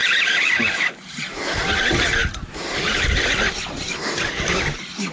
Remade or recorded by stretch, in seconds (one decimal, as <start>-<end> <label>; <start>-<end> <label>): 0.0-5.1 recorded